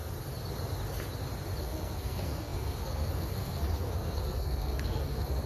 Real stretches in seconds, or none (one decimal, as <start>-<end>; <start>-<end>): 0.0-1.6

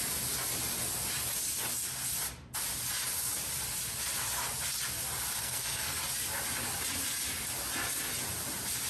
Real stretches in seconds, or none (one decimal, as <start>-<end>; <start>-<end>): 0.0-5.4; 6.0-8.9

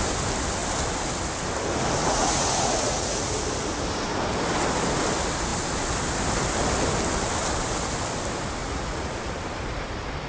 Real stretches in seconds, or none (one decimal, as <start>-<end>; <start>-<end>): 0.0-2.0; 3.3-8.6; 9.2-10.3

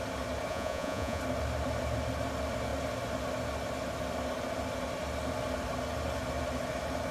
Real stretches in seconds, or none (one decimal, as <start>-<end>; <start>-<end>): 0.0-0.5; 1.2-7.1

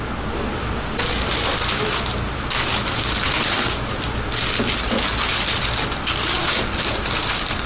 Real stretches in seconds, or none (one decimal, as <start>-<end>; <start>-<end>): 0.0-6.4; 7.1-7.7

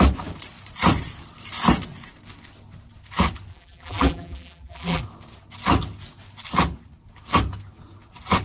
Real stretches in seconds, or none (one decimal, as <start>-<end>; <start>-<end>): 0.0-3.5; 5.0-8.4

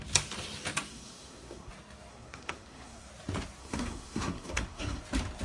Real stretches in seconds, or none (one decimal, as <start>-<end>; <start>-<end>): 0.0-0.9; 1.7-2.1; 3.1-3.6; 5.0-5.4